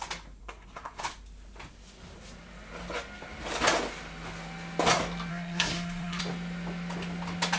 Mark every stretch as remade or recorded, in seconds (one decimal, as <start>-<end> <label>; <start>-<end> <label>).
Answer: 0.0-0.4 recorded; 0.4-1.0 remade; 1.0-5.3 recorded; 5.3-6.2 remade; 6.2-7.6 recorded